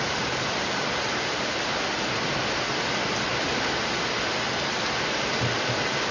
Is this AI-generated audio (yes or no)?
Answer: no